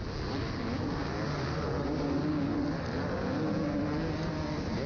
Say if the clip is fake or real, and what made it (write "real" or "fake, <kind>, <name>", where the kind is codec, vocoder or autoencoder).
real